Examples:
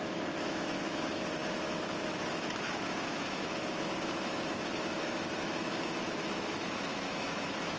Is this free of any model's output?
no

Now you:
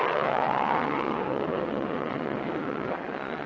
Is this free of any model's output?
no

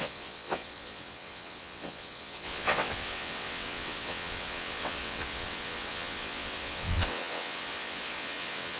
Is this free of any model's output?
no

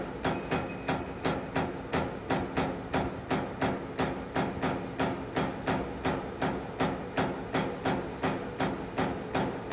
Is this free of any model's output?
yes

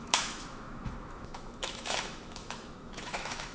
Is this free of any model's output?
no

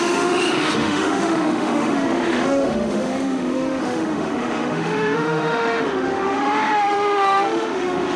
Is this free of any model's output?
no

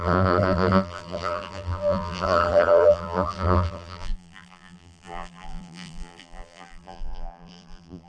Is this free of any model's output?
no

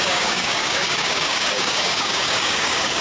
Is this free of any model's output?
no